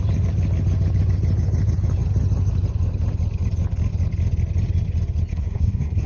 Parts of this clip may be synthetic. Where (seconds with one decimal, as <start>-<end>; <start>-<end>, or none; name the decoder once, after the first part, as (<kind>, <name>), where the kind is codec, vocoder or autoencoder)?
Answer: 5.3-6.1 (codec, SNAC)